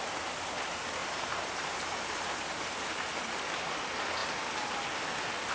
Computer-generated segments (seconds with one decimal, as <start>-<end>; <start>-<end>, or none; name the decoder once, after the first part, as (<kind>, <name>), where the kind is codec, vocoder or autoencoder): 1.0-2.6 (vocoder, BigVGAN v2)